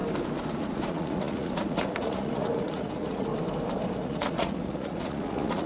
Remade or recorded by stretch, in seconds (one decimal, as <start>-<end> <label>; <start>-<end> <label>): 0.0-0.6 recorded; 0.6-3.3 remade; 3.3-4.0 recorded; 4.0-5.7 remade